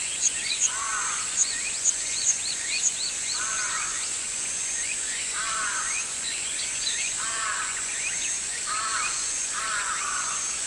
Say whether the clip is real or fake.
fake